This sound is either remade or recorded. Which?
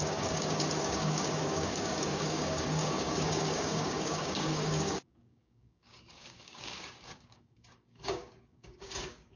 remade